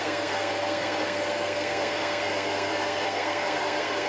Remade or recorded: remade